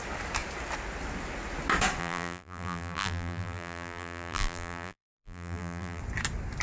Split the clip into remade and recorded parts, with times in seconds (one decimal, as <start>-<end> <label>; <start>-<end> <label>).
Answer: 0.0-2.0 recorded; 2.0-6.0 remade; 6.0-6.6 recorded